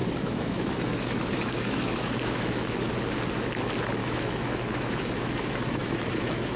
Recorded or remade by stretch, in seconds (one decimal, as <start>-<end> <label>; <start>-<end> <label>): 0.0-2.9 remade; 2.9-4.0 recorded; 4.0-6.6 remade

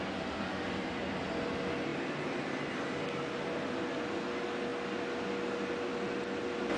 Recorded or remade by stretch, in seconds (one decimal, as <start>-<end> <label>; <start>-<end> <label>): 0.0-6.8 recorded

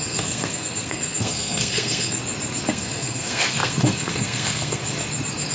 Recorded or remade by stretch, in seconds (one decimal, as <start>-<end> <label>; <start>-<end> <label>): 0.0-2.2 remade; 2.2-2.7 recorded; 2.7-4.8 remade; 4.8-5.5 recorded

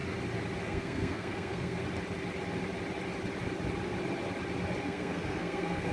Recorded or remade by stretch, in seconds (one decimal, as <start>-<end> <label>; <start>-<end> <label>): 0.0-0.6 recorded; 0.6-1.8 remade; 1.8-4.8 recorded; 4.8-5.9 remade